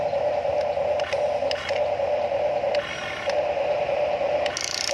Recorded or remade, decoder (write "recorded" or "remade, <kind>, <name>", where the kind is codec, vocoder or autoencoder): recorded